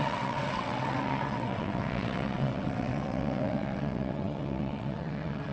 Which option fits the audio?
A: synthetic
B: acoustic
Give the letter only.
A